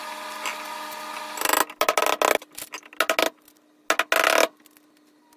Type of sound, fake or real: real